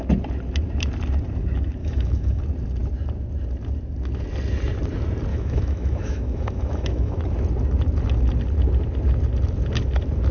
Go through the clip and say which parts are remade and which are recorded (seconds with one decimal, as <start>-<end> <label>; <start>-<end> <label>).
0.0-1.8 recorded; 1.8-2.4 remade; 2.4-5.3 recorded; 5.3-7.2 remade; 7.2-10.3 recorded